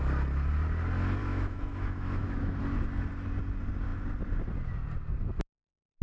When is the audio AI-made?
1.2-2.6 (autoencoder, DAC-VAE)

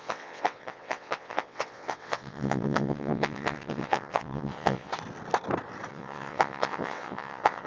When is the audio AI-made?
0.0-4.9 (vocoder, WaveNeXt); 5.9-7.7